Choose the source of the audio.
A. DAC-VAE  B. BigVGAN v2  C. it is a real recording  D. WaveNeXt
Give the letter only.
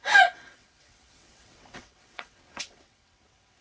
D